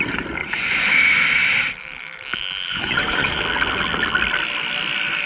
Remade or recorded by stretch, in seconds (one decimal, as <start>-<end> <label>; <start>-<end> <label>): 0.0-0.4 recorded; 0.4-1.0 remade; 1.0-2.7 recorded; 2.7-3.4 remade; 3.4-5.3 recorded

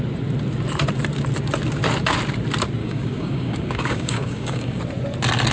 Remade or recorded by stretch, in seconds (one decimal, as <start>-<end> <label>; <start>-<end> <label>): 0.0-2.8 recorded; 2.8-4.8 remade; 4.8-5.5 recorded

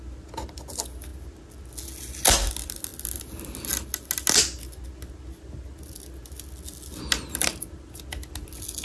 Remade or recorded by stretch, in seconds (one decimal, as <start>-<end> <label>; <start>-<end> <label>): 0.0-8.8 recorded

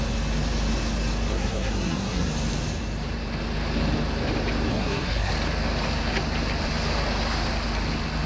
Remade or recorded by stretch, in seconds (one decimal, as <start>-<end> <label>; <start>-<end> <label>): 0.0-1.3 recorded; 1.3-2.3 remade; 2.3-4.7 recorded; 4.7-5.3 remade; 5.3-8.3 recorded